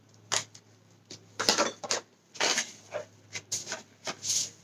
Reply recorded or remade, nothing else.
recorded